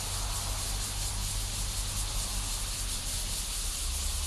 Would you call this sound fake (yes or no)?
no